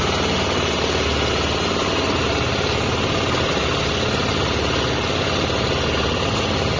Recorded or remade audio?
recorded